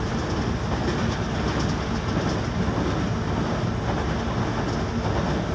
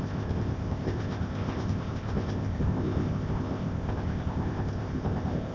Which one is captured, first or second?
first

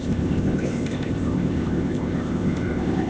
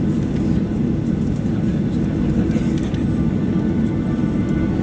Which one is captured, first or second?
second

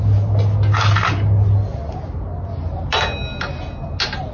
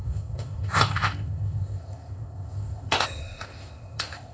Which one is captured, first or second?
first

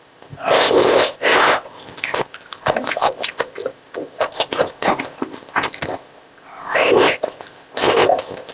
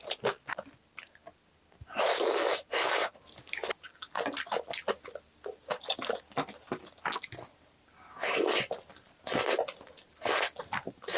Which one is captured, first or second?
second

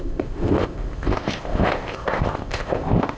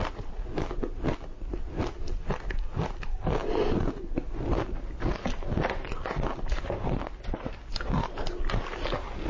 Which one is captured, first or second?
second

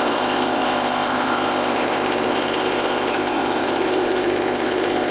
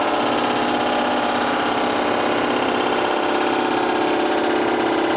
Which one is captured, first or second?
second